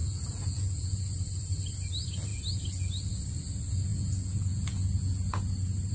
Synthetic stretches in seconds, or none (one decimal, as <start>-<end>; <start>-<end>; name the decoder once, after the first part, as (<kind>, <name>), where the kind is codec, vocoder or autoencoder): 0.0-1.0 (vocoder, Vocos); 3.9-5.5